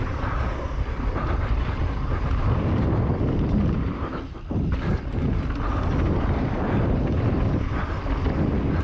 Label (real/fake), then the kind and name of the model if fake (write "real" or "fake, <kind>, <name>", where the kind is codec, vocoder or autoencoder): fake, vocoder, BigVGAN v2